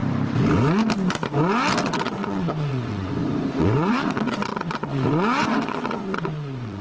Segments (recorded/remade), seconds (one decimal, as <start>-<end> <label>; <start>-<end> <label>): 0.0-1.8 recorded; 1.8-3.1 remade; 3.1-3.6 recorded; 3.6-6.8 remade